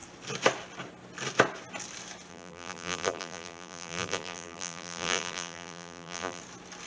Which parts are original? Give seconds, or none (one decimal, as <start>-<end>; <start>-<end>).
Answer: 0.0-2.3; 6.4-6.9

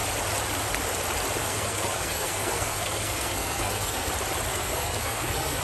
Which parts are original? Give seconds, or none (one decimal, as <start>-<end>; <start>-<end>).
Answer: 0.0-1.4; 4.1-4.5

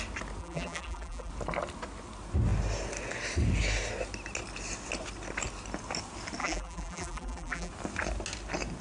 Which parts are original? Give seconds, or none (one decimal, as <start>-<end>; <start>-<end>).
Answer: 0.0-0.4; 1.3-6.4; 7.7-8.8

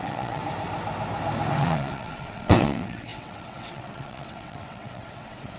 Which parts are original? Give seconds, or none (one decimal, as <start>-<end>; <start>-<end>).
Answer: 0.4-1.6

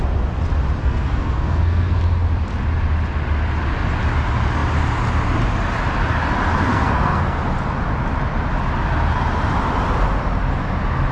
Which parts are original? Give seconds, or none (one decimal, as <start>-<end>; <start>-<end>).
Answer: 0.0-0.8; 2.0-6.7; 7.4-11.1